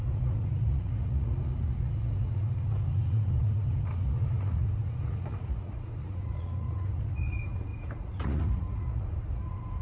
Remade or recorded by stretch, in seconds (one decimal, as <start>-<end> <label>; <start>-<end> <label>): 0.0-9.8 remade